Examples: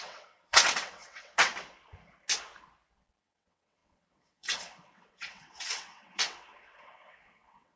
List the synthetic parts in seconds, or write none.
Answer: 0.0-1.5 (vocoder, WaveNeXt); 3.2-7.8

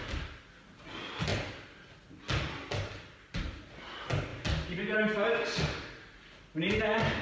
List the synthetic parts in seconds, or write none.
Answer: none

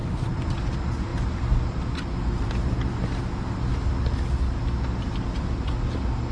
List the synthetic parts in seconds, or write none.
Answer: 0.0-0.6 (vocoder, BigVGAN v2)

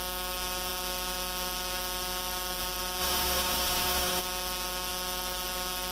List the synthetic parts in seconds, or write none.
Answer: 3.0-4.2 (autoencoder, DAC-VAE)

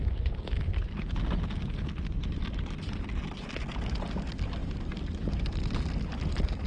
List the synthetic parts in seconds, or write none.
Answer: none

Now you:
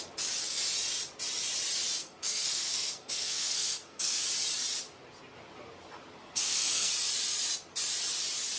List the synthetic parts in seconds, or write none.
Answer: 2.0-4.2 (codec, SNAC); 6.2-6.9

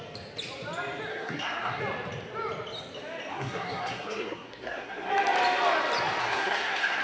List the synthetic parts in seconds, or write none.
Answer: 1.1-1.8 (codec, SNAC); 3.3-5.1; 6.2-7.0